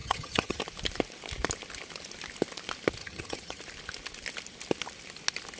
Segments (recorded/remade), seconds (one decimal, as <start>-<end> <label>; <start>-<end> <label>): 0.0-0.6 remade; 0.6-3.0 recorded; 3.0-3.6 remade; 3.6-5.6 recorded